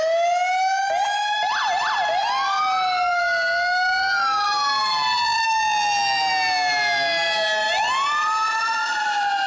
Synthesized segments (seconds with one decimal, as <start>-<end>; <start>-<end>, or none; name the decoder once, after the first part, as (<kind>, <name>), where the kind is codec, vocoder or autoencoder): none